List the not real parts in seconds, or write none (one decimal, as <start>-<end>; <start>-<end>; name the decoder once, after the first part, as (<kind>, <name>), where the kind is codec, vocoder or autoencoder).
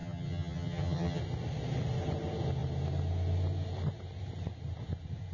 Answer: 0.0-1.2 (vocoder, HiFi-GAN)